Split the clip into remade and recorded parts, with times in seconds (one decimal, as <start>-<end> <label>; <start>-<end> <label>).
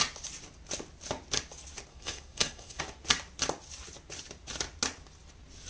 0.0-1.9 recorded; 1.9-2.8 remade; 2.8-5.7 recorded